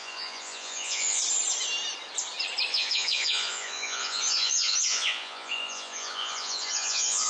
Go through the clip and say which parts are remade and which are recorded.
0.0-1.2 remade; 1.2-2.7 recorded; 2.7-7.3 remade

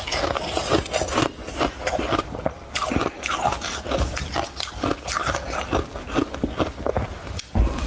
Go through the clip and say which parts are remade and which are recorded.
0.0-5.2 remade; 5.2-7.0 recorded; 7.0-7.9 remade

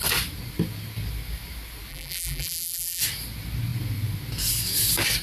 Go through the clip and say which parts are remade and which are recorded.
0.0-1.9 recorded; 1.9-3.0 remade; 3.0-5.2 recorded

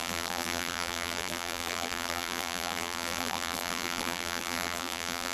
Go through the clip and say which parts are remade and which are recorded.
0.0-5.3 remade

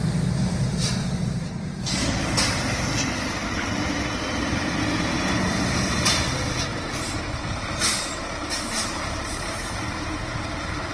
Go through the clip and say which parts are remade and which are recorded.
0.0-1.0 recorded; 1.0-6.3 remade; 6.3-6.7 recorded; 6.7-10.9 remade

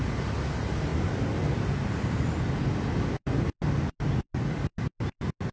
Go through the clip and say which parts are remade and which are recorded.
0.0-5.5 recorded